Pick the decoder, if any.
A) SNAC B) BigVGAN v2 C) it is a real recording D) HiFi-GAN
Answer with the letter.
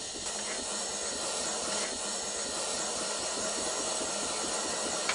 C